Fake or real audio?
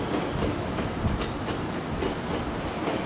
real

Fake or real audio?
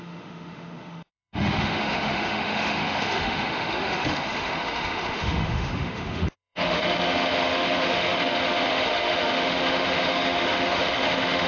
fake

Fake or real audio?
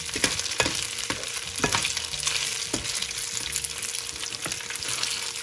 real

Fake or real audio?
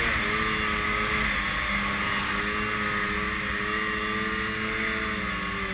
real